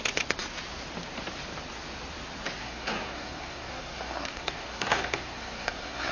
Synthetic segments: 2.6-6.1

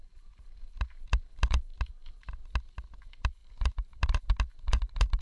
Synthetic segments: 0.0-2.4; 3.0-5.2

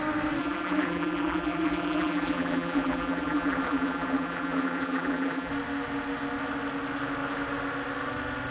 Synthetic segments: 0.4-5.5

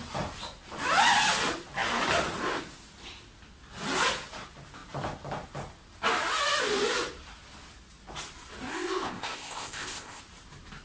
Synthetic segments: 8.7-10.2

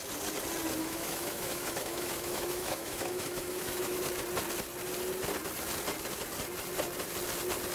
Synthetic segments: 0.8-4.0

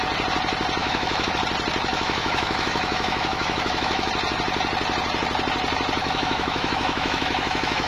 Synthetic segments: 0.8-1.3; 1.9-4.1; 6.0-7.9